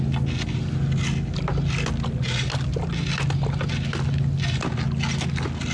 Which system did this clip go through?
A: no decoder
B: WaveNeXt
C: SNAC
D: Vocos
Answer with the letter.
A